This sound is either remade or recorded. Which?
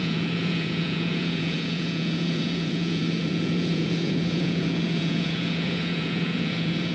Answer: remade